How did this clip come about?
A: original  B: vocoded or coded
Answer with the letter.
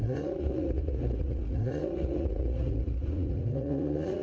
B